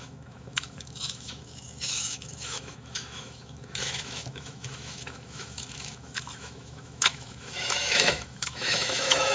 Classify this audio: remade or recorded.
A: remade